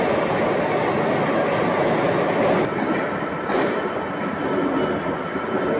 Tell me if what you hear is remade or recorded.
recorded